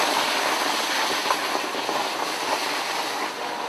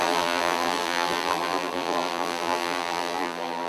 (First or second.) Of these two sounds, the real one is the first